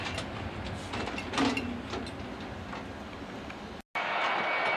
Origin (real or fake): real